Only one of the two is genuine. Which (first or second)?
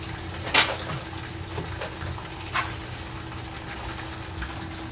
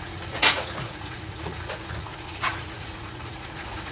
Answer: first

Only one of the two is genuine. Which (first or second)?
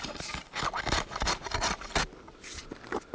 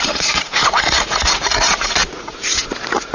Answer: first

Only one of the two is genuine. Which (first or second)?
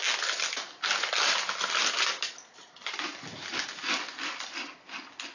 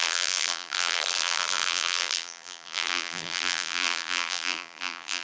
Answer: first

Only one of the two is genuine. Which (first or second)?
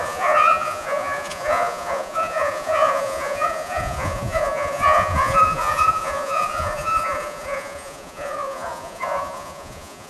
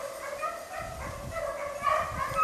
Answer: second